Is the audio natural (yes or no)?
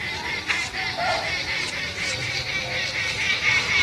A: yes